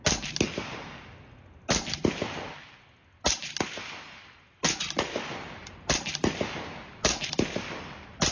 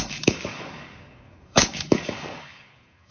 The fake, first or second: second